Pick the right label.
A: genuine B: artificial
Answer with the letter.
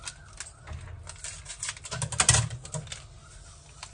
A